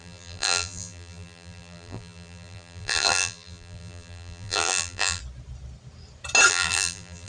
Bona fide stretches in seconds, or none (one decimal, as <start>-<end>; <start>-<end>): 5.2-6.5